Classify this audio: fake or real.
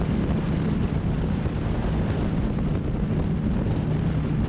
real